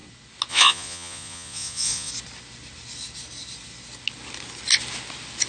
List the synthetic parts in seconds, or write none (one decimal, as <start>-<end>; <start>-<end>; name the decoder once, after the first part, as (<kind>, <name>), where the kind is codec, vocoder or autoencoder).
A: 0.5-2.1 (vocoder, Vocos)